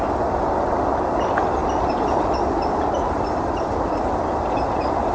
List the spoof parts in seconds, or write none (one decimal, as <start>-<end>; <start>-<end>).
1.6-5.1